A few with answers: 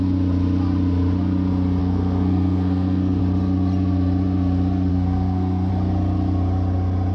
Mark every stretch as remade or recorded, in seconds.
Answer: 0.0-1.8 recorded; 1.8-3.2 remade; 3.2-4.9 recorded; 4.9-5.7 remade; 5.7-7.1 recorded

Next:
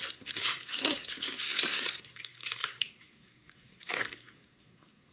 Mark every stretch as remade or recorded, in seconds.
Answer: 0.0-5.1 remade

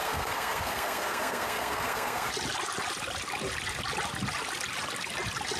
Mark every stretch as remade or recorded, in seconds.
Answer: 0.0-2.3 remade; 2.3-5.6 recorded